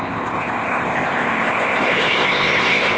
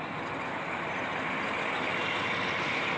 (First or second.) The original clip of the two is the second